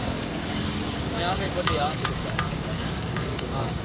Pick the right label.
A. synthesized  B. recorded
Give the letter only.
A